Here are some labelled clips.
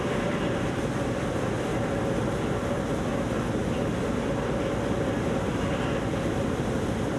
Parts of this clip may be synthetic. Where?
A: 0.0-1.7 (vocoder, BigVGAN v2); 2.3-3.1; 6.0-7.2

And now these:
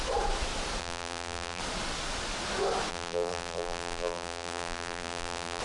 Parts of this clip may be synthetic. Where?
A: 0.8-1.6 (vocoder, BigVGAN v2); 2.9-5.6